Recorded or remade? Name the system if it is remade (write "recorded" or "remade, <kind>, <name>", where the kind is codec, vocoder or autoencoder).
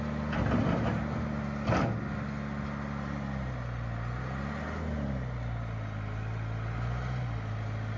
recorded